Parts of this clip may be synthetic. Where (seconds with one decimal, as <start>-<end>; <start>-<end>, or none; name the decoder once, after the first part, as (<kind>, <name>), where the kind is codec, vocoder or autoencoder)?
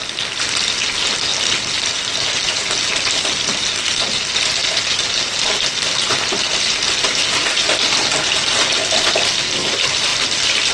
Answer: 4.6-5.3 (vocoder, BigVGAN v2); 10.1-10.7